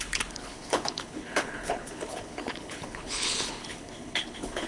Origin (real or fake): fake